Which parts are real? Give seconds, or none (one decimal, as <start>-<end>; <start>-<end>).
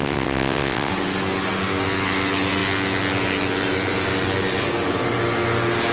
0.9-5.9